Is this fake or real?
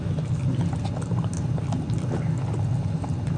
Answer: real